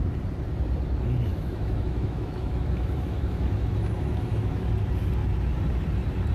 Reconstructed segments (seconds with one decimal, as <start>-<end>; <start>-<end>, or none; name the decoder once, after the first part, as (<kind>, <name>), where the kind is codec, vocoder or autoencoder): 1.3-4.7 (autoencoder, DAC-VAE)